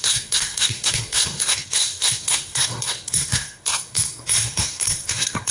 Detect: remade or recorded remade